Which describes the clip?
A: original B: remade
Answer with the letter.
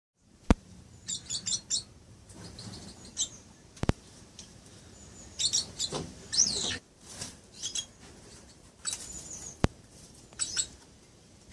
B